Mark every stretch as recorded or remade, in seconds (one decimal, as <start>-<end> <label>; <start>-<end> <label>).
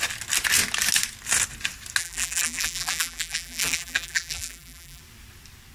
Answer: 0.0-2.0 recorded; 2.0-5.0 remade; 5.0-5.7 recorded